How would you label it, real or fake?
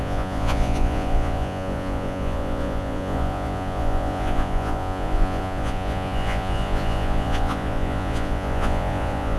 fake